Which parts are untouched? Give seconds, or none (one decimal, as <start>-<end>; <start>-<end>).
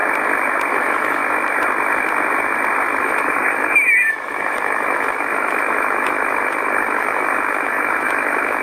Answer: 0.0-0.7; 1.2-3.0